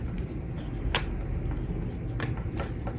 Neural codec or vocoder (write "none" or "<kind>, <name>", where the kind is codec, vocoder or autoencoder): none